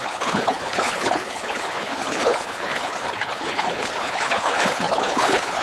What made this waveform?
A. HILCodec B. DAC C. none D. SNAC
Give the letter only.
A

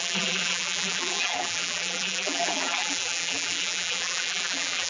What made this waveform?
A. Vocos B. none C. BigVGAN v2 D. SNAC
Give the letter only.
C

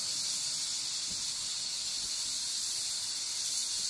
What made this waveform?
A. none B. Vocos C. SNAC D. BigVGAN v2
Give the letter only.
A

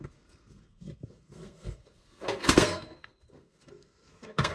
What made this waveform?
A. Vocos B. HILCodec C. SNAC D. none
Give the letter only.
C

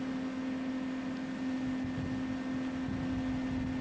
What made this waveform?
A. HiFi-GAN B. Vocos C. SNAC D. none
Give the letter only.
D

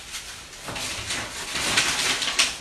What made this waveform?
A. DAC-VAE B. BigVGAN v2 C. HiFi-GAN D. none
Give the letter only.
D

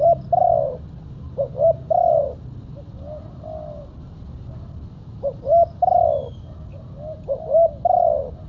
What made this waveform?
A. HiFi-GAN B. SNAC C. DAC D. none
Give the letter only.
D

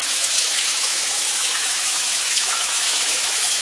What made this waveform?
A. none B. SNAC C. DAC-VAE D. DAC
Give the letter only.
C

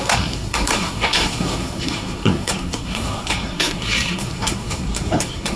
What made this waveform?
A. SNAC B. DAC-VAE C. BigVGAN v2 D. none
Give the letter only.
A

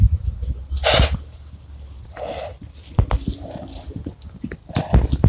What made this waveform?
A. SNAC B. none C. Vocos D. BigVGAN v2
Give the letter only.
B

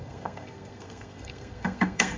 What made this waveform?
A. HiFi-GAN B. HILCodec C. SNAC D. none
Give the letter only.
C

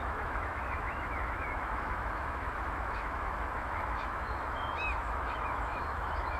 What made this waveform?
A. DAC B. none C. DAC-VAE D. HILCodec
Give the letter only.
C